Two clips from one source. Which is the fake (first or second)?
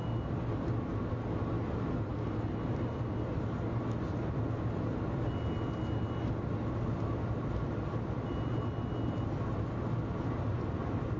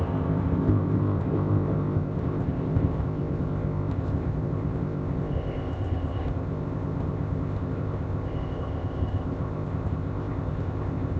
second